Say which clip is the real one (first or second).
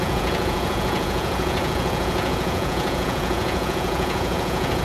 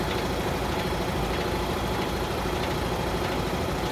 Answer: second